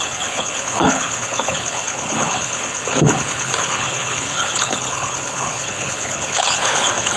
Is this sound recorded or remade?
remade